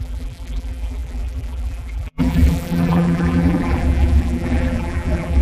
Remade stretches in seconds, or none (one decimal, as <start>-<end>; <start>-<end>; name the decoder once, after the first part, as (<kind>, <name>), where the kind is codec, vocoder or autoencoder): 0.0-5.4 (vocoder, BigVGAN v2)